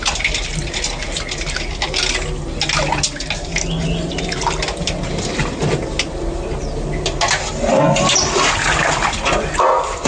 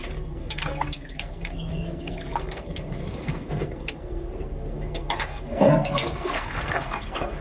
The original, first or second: first